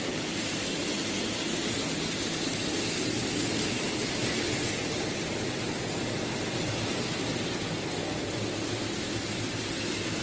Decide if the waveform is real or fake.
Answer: real